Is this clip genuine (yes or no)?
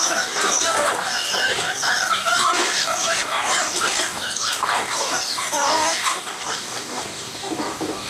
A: no